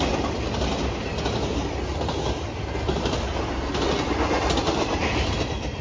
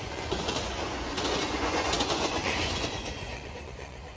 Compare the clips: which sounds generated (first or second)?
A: second